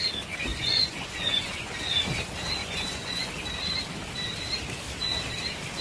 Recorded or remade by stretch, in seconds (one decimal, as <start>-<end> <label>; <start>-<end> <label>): 0.0-0.5 recorded; 0.5-1.9 remade; 1.9-2.6 recorded; 2.6-3.3 remade; 3.3-5.8 recorded